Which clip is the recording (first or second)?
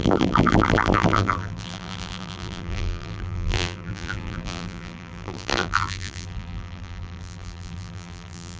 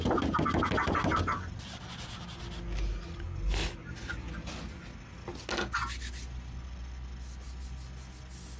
second